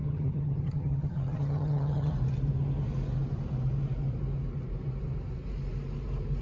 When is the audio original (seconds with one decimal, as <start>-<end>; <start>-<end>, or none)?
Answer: 2.1-6.4